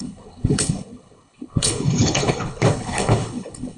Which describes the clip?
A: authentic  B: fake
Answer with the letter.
B